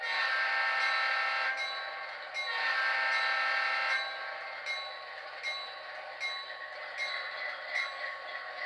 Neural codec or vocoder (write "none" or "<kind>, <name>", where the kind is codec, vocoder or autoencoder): none